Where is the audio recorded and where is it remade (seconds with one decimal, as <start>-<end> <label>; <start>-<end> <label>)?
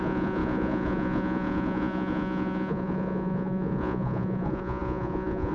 0.0-5.5 remade